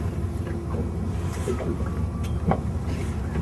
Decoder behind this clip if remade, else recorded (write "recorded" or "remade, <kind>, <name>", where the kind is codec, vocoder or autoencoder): recorded